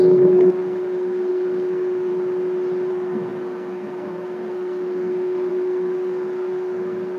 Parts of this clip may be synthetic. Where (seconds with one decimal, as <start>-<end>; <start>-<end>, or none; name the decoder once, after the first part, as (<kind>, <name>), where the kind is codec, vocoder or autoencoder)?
0.0-2.1 (codec, SNAC); 2.9-7.2